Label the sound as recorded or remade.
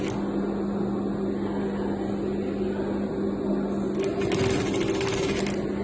recorded